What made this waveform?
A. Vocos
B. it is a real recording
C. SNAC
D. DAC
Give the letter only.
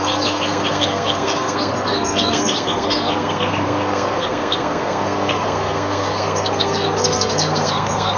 C